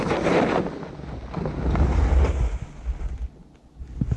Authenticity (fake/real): real